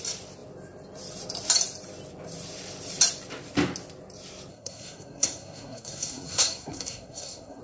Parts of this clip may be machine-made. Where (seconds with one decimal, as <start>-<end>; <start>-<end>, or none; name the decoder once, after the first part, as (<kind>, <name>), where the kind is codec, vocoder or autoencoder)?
4.5-7.6 (codec, SNAC)